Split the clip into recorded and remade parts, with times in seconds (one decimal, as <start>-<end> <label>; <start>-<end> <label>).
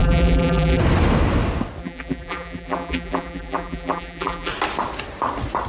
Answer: 0.0-0.8 remade; 0.8-1.8 recorded; 1.8-4.5 remade; 4.5-5.7 recorded